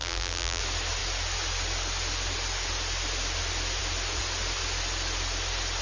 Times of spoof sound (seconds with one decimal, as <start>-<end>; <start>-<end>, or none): 0.0-0.6